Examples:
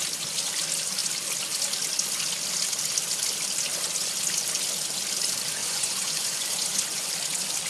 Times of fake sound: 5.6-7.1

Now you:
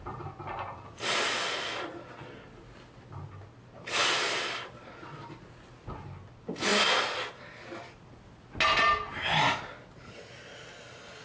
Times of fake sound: none

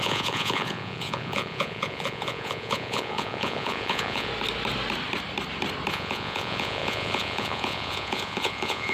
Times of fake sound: 0.0-4.3; 5.9-8.9

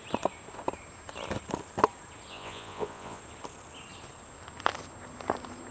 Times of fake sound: 2.3-3.2

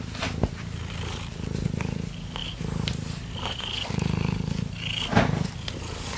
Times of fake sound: none

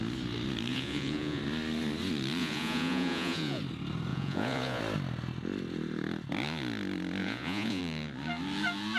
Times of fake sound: 0.7-1.4; 2.4-3.6; 4.1-4.8; 7.2-7.8

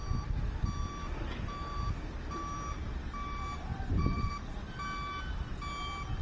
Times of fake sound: 3.7-4.3